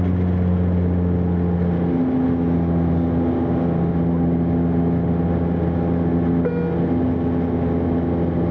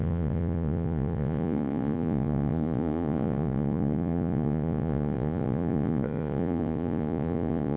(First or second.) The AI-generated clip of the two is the second